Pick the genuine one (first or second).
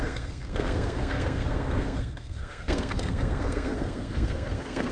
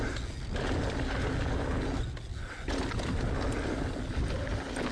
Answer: second